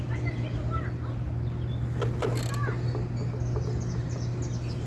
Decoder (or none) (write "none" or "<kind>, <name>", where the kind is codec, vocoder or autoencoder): none